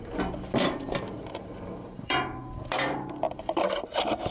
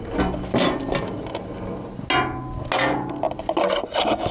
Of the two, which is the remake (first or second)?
first